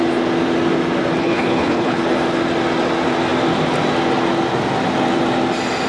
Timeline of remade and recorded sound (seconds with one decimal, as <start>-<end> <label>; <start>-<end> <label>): 0.0-1.2 recorded; 1.2-2.0 remade; 2.0-5.9 recorded